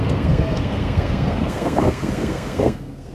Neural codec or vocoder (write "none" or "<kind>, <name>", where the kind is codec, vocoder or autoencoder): codec, SNAC